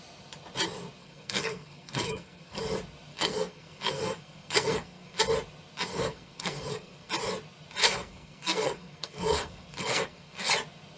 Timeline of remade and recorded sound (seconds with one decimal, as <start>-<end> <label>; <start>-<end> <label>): 0.0-1.0 recorded; 1.0-2.6 remade; 2.6-3.1 recorded; 3.1-5.2 remade; 5.2-5.9 recorded; 5.9-7.1 remade; 7.1-7.8 recorded; 7.8-10.5 remade; 10.5-11.0 recorded